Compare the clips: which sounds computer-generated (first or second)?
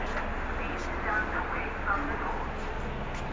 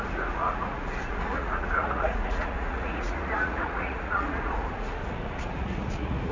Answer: second